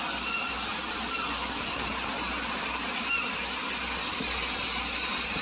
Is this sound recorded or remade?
recorded